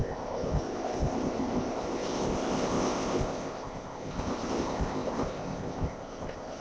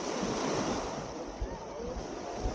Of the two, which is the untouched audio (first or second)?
second